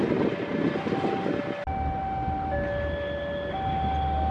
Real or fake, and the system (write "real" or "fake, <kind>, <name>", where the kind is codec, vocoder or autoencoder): real